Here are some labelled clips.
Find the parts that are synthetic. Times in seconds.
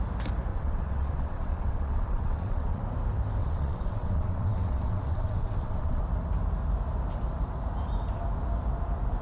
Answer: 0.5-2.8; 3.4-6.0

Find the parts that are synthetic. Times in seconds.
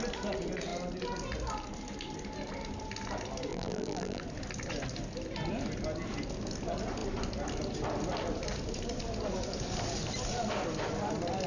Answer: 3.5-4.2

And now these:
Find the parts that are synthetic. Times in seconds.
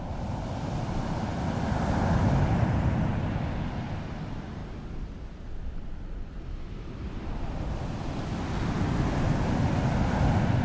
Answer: none